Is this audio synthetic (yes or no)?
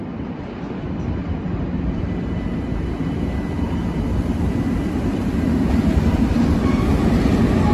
no